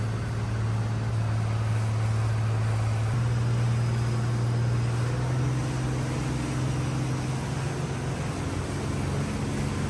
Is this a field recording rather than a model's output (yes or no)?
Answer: yes